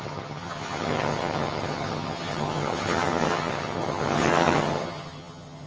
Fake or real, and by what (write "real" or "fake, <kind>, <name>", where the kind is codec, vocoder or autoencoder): fake, vocoder, HiFi-GAN